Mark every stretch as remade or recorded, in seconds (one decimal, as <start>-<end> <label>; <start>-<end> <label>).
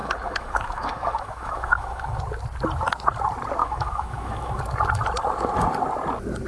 0.0-2.2 remade; 2.2-3.6 recorded; 3.6-4.6 remade; 4.6-6.5 recorded